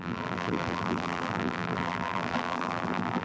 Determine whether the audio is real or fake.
fake